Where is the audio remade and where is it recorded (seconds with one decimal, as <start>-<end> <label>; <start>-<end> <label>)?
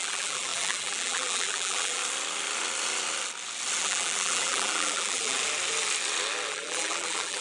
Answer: 0.0-2.0 remade; 2.0-3.8 recorded; 3.8-5.4 remade; 5.4-6.5 recorded; 6.5-7.4 remade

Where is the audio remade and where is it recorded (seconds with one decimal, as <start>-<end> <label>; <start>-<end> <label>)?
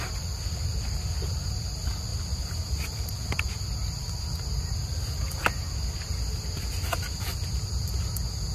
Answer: 0.0-8.5 recorded